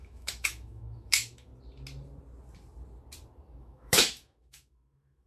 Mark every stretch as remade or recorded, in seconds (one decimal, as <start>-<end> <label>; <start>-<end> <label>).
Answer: 0.0-1.5 remade; 1.5-3.6 recorded; 3.6-5.3 remade